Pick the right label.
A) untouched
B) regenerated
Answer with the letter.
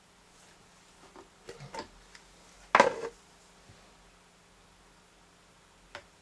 A